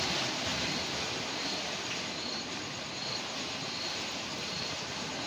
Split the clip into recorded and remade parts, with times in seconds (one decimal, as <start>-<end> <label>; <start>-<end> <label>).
0.0-5.3 recorded